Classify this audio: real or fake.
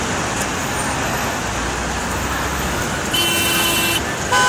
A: real